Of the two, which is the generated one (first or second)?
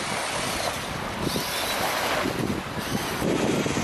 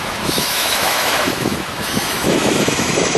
second